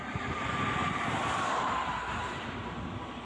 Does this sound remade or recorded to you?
recorded